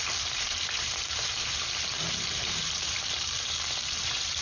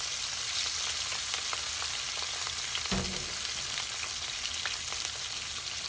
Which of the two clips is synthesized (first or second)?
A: first